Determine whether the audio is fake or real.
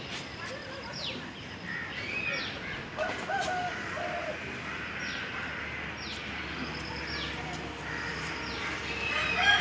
real